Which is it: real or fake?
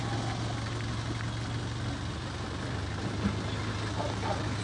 real